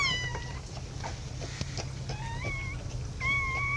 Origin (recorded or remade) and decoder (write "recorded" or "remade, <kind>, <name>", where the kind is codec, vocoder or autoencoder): recorded